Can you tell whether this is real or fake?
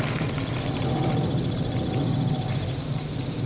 real